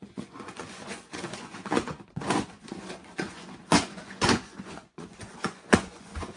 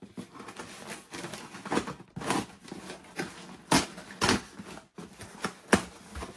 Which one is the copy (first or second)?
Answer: first